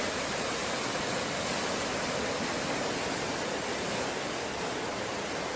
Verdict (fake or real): real